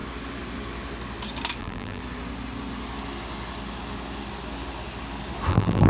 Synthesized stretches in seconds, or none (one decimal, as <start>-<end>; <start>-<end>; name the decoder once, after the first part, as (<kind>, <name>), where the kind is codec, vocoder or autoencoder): 1.6-2.0 (vocoder, BigVGAN v2); 5.5-5.9